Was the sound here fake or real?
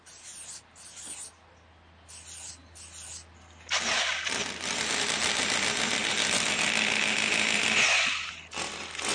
real